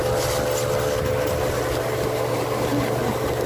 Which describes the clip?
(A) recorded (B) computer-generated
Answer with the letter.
A